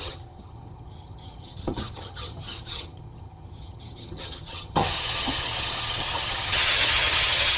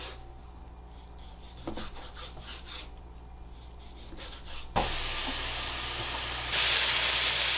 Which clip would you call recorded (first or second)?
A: second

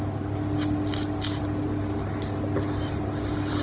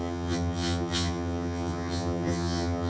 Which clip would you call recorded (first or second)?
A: first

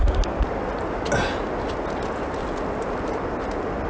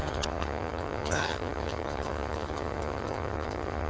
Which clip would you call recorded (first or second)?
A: first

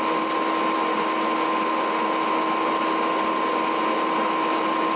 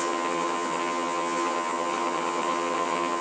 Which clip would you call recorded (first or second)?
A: first